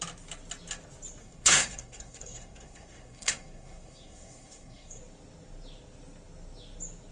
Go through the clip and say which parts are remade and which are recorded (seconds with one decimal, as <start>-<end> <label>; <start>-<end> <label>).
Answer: 0.0-1.2 recorded; 1.2-5.0 remade; 5.0-7.1 recorded